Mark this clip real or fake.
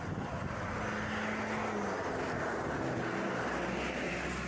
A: real